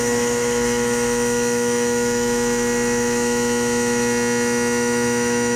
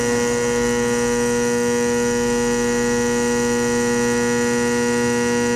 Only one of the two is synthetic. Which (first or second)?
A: first